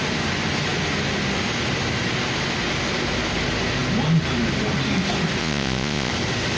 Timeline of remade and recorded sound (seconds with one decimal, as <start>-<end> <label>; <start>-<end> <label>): 0.0-5.4 recorded; 5.4-6.1 remade; 6.1-6.6 recorded